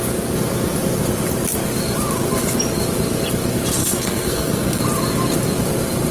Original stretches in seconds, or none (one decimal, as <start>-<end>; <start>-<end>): 0.0-3.8; 4.8-6.1

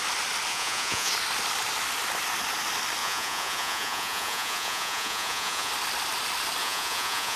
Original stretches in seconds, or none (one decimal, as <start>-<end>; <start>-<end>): 0.0-0.5; 1.1-3.0; 5.7-6.6

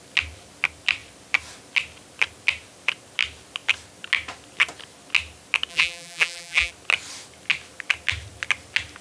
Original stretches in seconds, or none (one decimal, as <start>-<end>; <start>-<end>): 0.0-5.7; 6.7-9.0

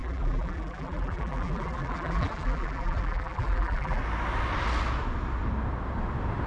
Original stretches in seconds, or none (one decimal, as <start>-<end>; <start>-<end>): 4.0-6.5